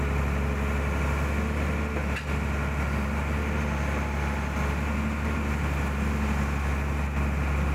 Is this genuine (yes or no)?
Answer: yes